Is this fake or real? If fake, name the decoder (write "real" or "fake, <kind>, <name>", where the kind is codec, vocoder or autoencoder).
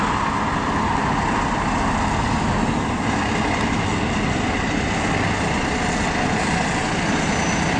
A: real